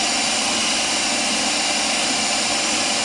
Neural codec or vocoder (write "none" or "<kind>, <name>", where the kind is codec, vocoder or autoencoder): none